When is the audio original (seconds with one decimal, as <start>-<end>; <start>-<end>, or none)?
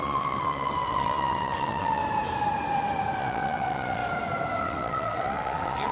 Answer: 2.0-3.2; 4.0-4.6